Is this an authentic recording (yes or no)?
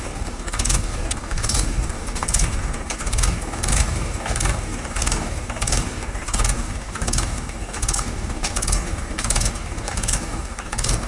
no